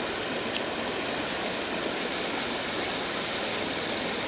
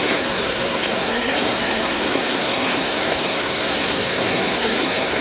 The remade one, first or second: second